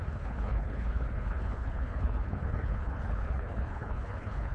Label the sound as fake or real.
fake